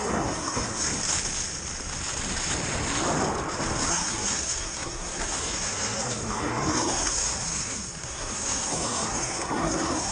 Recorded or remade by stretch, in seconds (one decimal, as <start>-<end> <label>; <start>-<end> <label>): 0.0-0.9 remade; 0.9-3.9 recorded; 3.9-10.1 remade